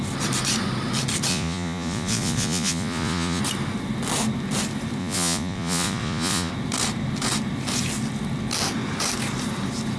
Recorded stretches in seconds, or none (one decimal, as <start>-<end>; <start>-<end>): 0.0-1.3; 3.4-5.0; 6.5-10.0